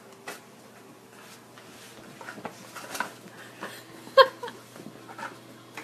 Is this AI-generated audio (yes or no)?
no